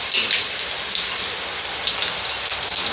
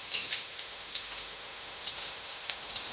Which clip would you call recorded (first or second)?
first